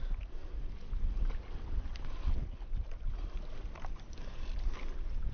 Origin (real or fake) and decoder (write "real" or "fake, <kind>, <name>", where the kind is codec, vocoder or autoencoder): real